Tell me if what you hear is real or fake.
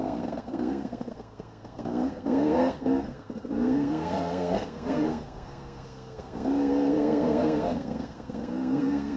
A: fake